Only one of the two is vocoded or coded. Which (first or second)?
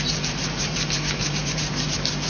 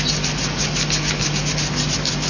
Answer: first